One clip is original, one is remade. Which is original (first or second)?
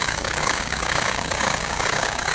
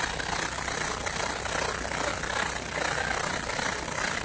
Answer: second